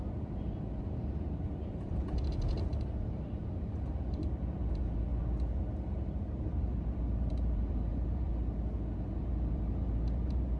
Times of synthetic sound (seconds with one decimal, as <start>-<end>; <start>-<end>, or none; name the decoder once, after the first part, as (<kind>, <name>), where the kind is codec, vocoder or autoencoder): 0.0-5.1 (vocoder, BigVGAN v2); 6.0-8.3; 9.2-10.6